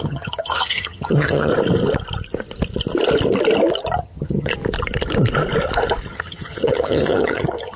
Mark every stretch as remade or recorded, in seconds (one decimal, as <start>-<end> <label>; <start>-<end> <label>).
0.0-1.5 remade; 1.5-4.0 recorded; 4.0-4.5 remade; 4.5-6.1 recorded; 6.1-7.8 remade